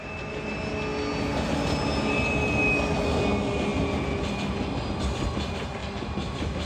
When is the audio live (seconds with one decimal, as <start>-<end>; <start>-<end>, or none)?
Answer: 0.0-5.8